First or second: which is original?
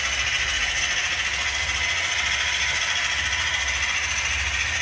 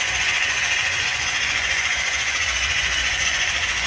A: first